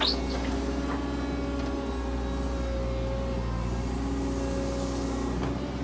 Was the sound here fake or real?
real